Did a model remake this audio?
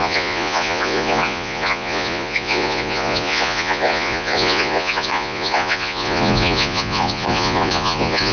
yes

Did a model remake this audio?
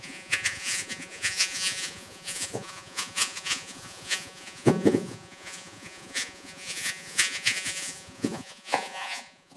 yes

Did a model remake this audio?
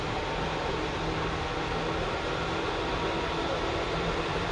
no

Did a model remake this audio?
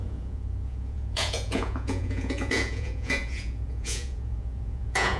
yes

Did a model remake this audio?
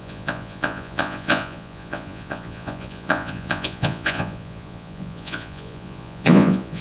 yes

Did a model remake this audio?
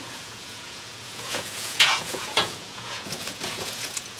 yes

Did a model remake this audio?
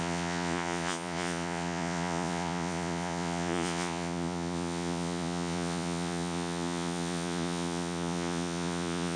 yes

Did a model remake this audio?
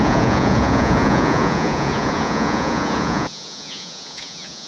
yes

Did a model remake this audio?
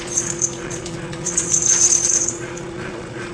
yes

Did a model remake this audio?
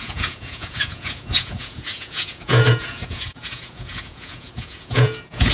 yes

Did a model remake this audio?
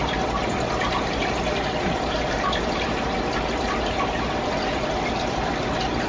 no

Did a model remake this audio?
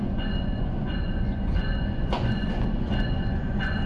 yes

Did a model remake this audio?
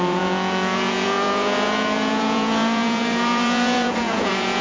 yes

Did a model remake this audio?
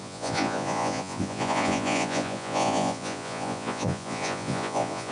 yes